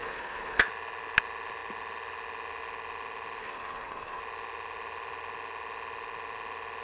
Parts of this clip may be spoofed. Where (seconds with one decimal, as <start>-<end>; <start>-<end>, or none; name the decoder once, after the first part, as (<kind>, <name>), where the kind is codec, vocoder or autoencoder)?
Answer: 0.0-0.6 (codec, HILCodec); 3.4-4.2